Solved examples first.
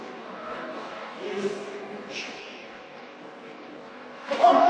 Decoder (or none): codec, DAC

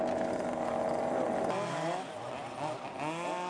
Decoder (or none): none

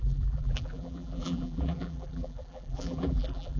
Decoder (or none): vocoder, BigVGAN v2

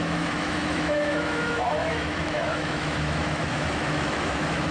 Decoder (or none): autoencoder, DAC-VAE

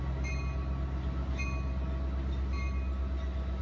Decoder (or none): none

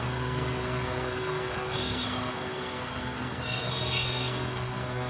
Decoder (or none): codec, SNAC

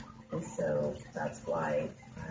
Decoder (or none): none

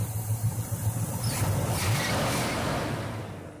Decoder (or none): none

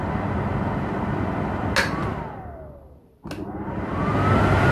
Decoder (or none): none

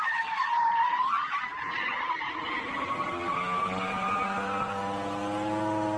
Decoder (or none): none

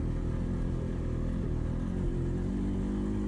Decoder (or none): none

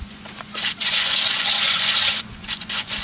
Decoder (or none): vocoder, Vocos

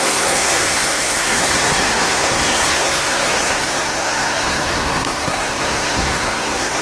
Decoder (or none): codec, SNAC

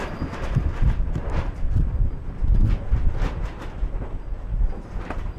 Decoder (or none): none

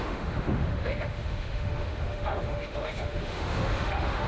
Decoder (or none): autoencoder, DAC-VAE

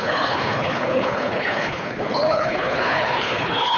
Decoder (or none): codec, HILCodec